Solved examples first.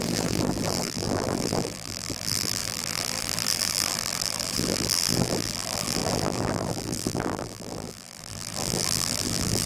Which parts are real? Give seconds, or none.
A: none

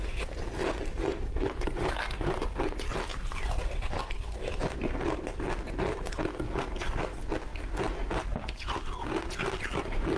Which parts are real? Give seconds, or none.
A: 0.0-1.1; 1.9-3.1; 4.0-10.2

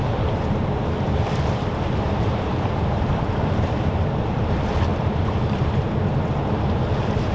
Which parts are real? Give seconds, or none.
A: none